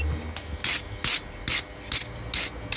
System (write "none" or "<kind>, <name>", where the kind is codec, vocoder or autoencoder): none